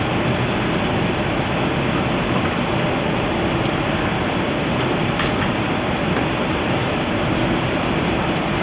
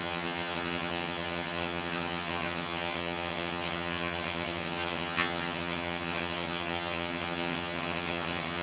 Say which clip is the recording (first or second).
first